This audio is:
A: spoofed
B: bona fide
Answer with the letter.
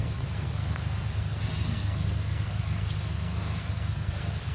A